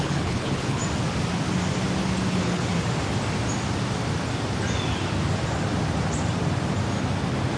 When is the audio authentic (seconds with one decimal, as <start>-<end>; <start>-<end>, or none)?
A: 0.8-2.3; 2.7-7.6